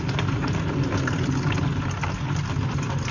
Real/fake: real